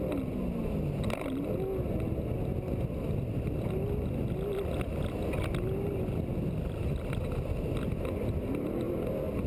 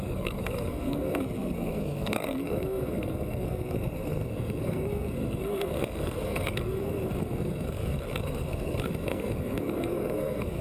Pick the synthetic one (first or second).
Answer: second